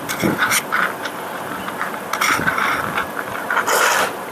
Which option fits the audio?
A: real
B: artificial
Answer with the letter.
A